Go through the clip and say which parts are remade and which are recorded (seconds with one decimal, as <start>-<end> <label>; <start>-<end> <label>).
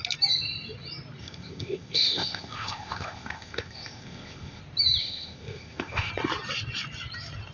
0.0-1.2 recorded; 1.2-4.6 remade; 4.6-5.0 recorded; 5.0-6.1 remade; 6.1-7.5 recorded